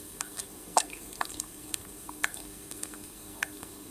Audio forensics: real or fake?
fake